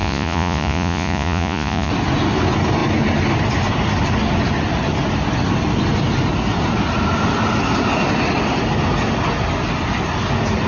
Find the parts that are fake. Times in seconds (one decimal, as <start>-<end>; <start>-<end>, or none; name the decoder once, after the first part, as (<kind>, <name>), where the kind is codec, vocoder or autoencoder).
0.0-1.9 (vocoder, Vocos)